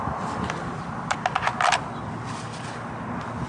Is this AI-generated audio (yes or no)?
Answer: no